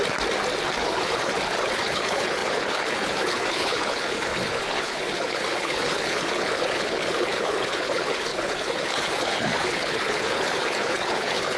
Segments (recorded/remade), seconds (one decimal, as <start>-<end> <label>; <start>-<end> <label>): 0.0-0.8 recorded; 0.8-11.6 remade